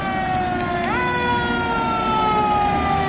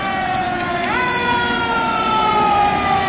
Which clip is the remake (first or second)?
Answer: second